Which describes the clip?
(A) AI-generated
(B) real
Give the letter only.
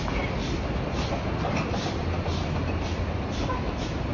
B